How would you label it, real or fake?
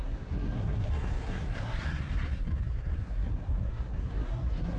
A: fake